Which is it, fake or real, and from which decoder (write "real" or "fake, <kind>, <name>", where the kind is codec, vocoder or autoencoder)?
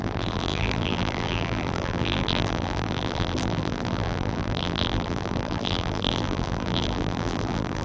fake, vocoder, BigVGAN v2